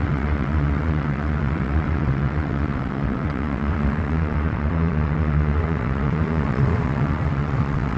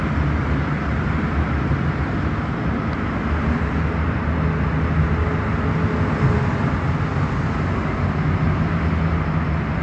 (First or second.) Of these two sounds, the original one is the second